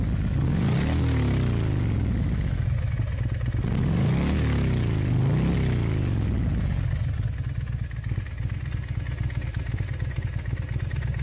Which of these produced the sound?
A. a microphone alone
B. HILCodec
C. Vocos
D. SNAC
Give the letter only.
A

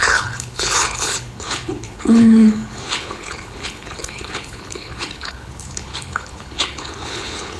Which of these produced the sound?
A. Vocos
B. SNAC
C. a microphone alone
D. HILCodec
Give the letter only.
D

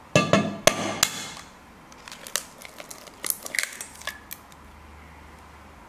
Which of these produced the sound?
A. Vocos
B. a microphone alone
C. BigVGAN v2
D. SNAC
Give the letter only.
B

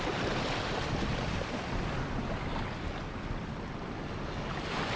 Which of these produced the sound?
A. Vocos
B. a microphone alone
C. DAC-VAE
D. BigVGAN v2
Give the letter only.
B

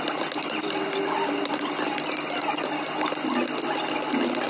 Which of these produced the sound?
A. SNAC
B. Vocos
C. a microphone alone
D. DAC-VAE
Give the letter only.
C